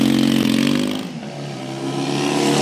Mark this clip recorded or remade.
recorded